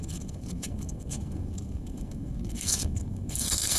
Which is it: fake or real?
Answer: fake